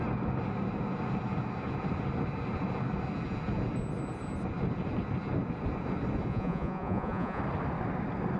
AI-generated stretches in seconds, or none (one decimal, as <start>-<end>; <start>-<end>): 6.3-7.4